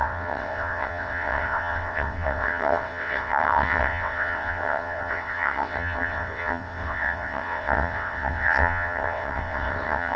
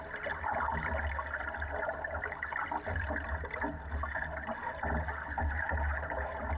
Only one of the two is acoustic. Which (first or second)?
second